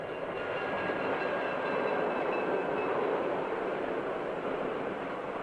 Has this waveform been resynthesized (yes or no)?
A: no